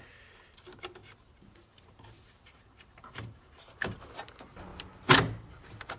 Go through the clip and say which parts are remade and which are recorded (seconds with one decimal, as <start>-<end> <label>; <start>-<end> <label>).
0.0-1.0 recorded; 1.0-4.0 remade; 4.0-6.0 recorded